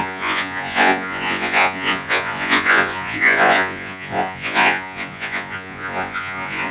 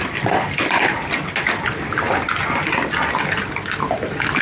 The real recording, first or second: second